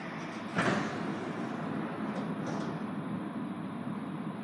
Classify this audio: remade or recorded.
recorded